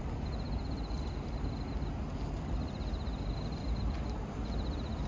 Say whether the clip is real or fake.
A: real